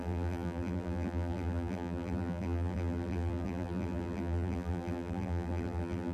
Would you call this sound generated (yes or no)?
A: yes